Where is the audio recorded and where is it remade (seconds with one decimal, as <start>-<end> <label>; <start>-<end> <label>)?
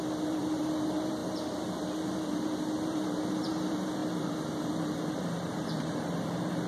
0.0-6.7 remade